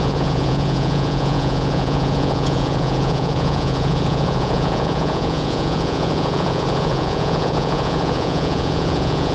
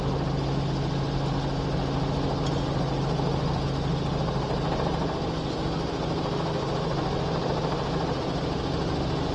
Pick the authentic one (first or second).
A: second